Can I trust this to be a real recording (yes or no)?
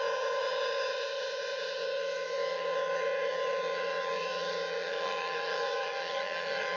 no